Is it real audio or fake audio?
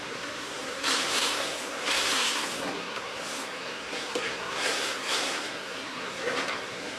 fake